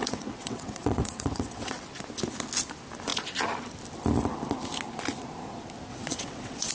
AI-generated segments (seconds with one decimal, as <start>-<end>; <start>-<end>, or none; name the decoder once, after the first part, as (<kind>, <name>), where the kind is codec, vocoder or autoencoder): 0.0-1.8 (vocoder, WaveNeXt); 5.9-6.7